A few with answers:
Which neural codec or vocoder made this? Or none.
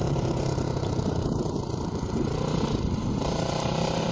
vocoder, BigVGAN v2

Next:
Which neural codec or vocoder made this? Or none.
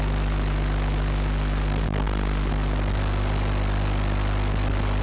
none